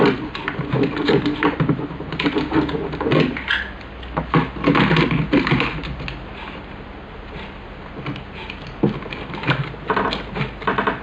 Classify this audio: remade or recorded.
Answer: recorded